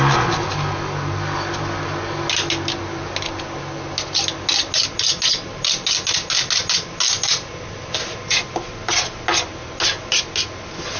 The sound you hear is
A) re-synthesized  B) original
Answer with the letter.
B